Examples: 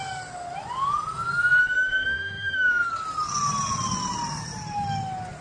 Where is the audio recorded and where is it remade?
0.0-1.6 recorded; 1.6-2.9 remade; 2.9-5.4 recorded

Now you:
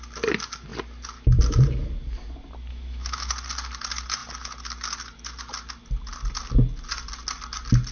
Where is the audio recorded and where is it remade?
0.0-2.7 recorded; 2.7-3.3 remade; 3.3-7.9 recorded

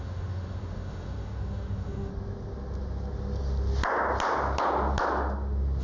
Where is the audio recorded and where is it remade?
0.0-2.1 remade; 2.1-5.8 recorded